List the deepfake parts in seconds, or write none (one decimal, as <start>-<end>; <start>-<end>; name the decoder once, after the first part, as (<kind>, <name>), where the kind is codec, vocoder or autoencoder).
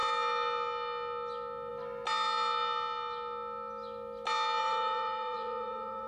4.6-6.1 (vocoder, BigVGAN v2)